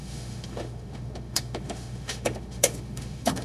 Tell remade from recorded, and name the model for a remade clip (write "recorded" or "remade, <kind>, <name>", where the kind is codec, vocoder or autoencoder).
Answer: remade, autoencoder, DAC-VAE